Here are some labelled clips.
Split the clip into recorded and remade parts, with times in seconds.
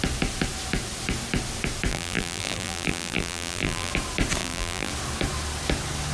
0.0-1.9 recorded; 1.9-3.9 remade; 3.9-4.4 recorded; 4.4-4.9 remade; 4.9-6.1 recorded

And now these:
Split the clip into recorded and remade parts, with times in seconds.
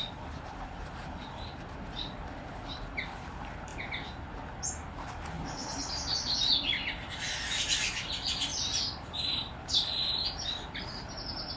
0.0-8.5 recorded; 8.5-11.6 remade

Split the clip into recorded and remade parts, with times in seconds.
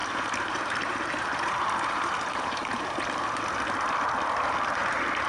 0.0-3.1 remade; 3.1-5.3 recorded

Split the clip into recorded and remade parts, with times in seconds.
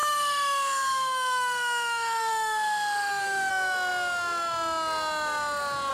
0.0-3.5 remade; 3.5-5.9 recorded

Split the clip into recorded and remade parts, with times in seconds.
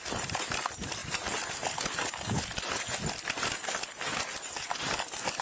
0.0-5.4 recorded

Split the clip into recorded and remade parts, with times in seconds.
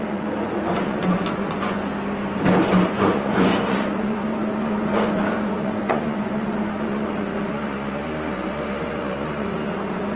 0.0-1.9 remade; 1.9-2.9 recorded; 2.9-10.2 remade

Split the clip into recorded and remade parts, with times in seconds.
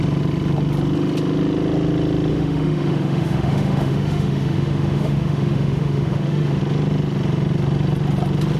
0.0-2.3 recorded; 2.3-6.6 remade; 6.6-8.6 recorded